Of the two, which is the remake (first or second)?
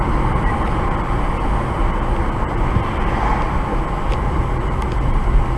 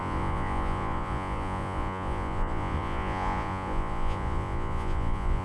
second